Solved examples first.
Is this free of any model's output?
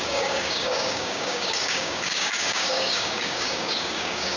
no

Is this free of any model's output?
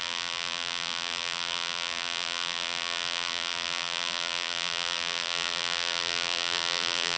no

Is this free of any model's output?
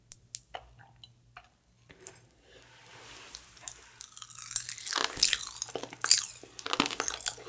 yes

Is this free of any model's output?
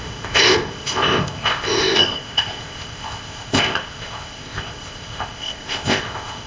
no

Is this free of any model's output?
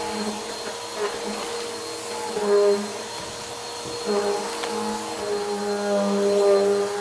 yes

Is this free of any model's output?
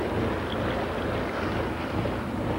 yes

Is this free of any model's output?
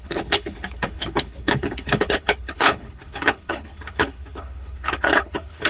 no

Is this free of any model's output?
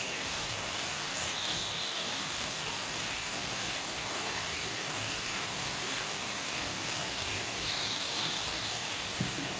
no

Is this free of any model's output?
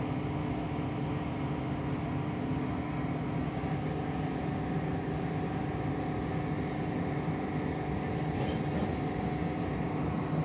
yes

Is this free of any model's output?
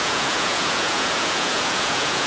no